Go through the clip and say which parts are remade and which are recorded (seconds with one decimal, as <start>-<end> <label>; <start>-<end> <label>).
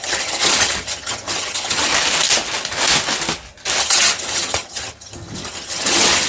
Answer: 0.0-1.9 remade; 1.9-3.8 recorded; 3.8-6.3 remade